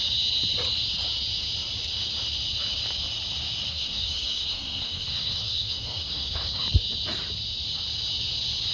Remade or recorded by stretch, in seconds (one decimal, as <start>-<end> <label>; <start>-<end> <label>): 0.0-3.7 recorded; 3.7-6.6 remade; 6.6-8.7 recorded